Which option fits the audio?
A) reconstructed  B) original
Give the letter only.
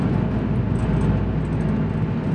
B